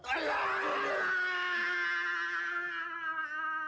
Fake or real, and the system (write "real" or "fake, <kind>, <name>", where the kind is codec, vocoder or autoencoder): real